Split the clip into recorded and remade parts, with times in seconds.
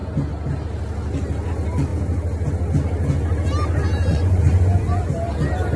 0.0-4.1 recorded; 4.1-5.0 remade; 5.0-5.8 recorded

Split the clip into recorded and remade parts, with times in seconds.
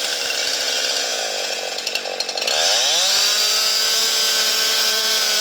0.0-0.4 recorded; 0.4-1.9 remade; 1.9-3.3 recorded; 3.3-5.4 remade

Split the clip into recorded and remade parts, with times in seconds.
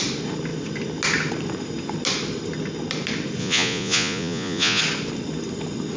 0.0-3.4 recorded; 3.4-4.8 remade; 4.8-6.0 recorded